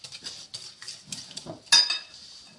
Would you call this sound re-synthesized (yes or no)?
no